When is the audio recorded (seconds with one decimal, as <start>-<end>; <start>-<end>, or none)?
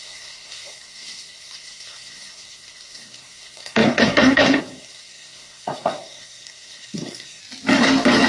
7.4-8.3